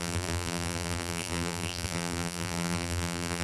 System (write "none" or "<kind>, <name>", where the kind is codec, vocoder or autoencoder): vocoder, BigVGAN v2